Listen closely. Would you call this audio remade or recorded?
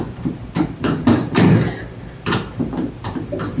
remade